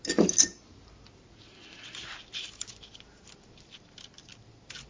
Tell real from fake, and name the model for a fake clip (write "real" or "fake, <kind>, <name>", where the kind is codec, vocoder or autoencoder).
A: real